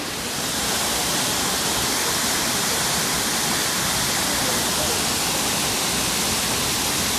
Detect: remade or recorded recorded